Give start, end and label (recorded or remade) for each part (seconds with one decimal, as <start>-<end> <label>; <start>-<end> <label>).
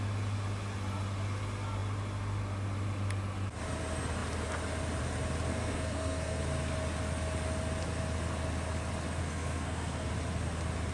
0.0-5.5 recorded; 5.5-6.4 remade; 6.4-9.2 recorded; 9.2-10.1 remade; 10.1-10.9 recorded